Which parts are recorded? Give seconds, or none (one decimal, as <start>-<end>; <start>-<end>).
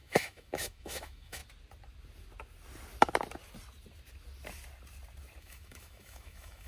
1.4-5.4